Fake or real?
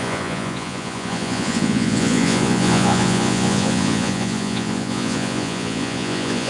fake